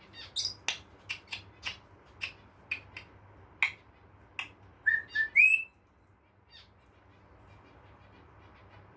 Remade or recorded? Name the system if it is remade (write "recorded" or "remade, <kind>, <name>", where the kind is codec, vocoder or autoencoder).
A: recorded